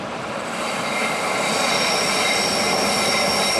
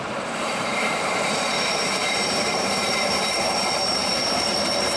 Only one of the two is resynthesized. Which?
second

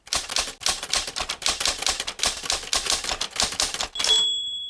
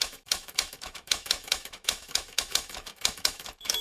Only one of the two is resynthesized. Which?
second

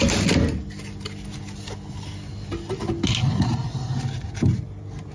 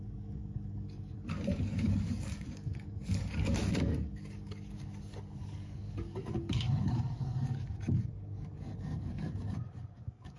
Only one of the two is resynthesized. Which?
second